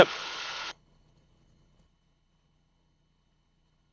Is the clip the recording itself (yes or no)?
no